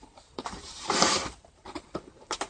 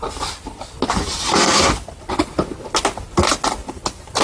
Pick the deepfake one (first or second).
first